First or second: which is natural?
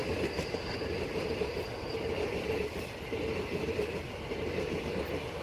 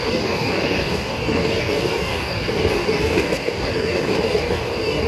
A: first